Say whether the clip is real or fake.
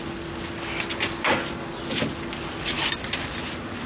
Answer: real